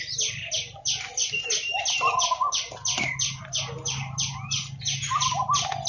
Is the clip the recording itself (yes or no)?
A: yes